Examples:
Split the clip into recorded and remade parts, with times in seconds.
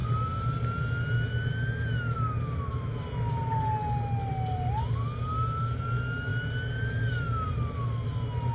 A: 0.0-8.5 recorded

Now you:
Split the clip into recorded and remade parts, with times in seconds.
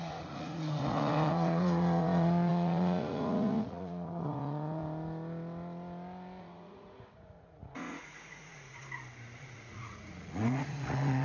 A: 0.0-4.8 remade; 4.8-6.4 recorded; 6.4-8.8 remade; 8.8-9.4 recorded; 9.4-11.2 remade